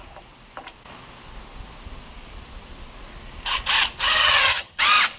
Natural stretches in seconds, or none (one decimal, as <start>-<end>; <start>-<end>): 0.0-4.2; 4.8-5.2